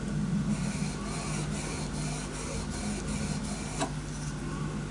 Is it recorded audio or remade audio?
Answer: recorded